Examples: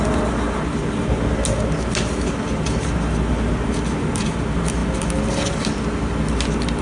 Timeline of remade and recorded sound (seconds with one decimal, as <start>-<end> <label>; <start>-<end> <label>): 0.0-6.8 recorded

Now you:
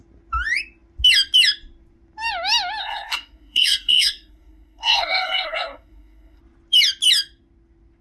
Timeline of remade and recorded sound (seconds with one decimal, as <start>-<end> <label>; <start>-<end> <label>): 0.0-2.8 recorded; 2.8-6.4 remade; 6.4-8.0 recorded

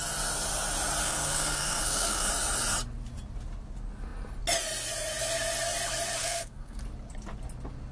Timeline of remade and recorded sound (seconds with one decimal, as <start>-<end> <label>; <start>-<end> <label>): 0.0-1.0 recorded; 1.0-2.3 remade; 2.3-6.2 recorded; 6.2-6.8 remade; 6.8-7.9 recorded

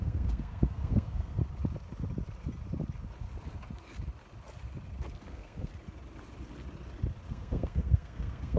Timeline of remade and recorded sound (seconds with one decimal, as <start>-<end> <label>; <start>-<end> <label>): 0.0-1.4 remade; 1.4-5.2 recorded; 5.2-5.7 remade; 5.7-7.3 recorded; 7.3-8.6 remade